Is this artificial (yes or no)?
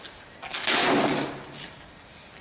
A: no